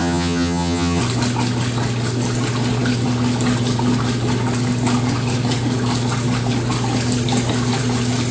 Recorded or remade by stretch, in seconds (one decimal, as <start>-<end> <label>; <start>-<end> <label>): 0.0-1.0 remade; 1.0-8.3 recorded